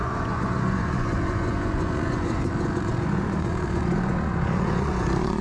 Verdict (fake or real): fake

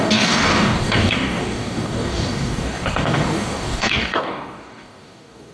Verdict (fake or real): fake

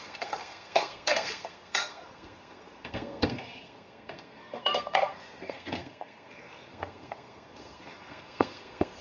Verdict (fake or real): fake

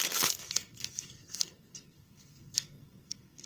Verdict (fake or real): fake